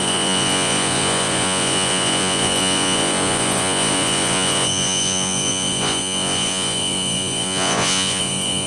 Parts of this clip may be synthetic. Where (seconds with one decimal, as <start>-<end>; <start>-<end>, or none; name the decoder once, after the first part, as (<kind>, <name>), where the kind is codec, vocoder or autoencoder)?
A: 0.0-8.7 (vocoder, Vocos)